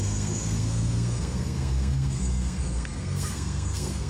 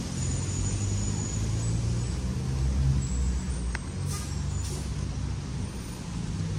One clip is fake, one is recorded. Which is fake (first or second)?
first